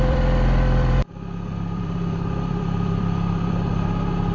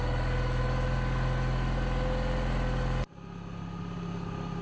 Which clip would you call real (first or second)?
second